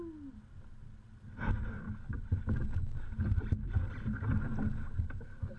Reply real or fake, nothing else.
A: real